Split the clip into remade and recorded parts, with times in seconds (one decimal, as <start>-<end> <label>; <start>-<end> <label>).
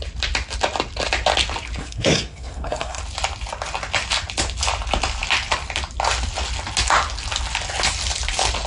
0.0-1.8 recorded; 1.8-3.0 remade; 3.0-8.7 recorded